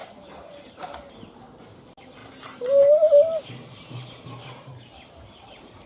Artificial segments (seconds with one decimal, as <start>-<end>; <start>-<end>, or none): 0.0-1.0; 2.2-5.9